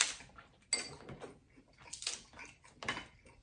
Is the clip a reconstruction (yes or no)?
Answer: no